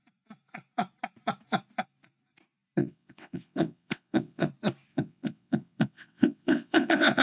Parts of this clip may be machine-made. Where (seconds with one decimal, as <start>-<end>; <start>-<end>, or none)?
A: 2.8-4.5; 4.9-7.2